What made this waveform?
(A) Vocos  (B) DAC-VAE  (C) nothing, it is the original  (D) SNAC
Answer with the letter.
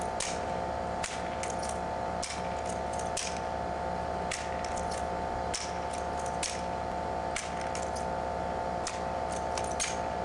C